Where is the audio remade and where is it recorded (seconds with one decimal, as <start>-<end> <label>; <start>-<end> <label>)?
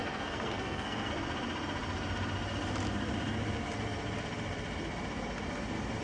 0.0-1.1 remade; 1.1-6.0 recorded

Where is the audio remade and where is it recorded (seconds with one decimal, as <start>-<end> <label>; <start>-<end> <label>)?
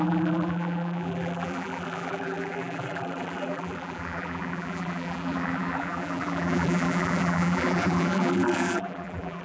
0.0-9.4 remade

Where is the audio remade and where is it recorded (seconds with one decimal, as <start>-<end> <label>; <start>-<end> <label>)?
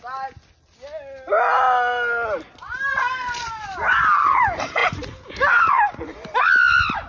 0.0-7.1 recorded